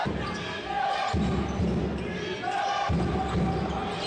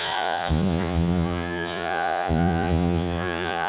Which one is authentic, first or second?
first